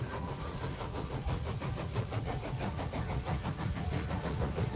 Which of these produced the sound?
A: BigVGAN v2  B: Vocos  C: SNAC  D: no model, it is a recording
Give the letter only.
B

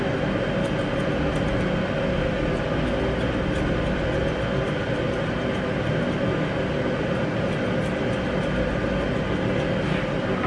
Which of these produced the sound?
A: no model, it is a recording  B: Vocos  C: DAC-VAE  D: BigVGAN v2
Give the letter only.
A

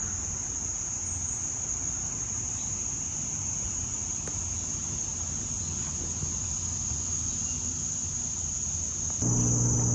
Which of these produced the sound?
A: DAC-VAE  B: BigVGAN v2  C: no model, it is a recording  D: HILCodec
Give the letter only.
C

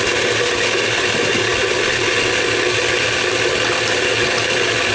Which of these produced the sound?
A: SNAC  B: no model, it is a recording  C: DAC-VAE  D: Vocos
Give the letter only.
B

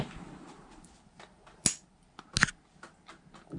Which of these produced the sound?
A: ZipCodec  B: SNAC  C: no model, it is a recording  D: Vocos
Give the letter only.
C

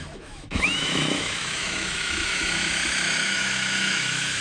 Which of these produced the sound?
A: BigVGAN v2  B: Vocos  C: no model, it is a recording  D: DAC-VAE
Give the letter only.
D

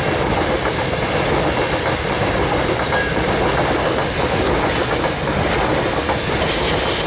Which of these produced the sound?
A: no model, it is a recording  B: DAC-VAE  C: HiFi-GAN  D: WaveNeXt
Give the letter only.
A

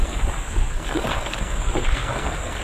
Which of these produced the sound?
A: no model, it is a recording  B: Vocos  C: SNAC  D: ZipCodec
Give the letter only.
C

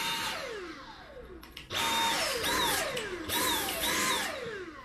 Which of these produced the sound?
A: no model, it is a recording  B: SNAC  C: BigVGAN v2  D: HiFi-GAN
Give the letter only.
A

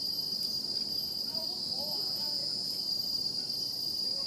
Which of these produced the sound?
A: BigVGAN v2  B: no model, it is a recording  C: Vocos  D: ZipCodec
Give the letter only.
B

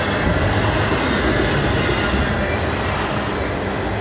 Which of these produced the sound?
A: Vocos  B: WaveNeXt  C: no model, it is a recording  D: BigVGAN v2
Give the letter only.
C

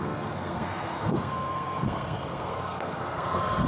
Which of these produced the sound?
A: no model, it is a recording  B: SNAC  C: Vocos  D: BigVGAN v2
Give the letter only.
B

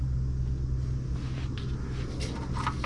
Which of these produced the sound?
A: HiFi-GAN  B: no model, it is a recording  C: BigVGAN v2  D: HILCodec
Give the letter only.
B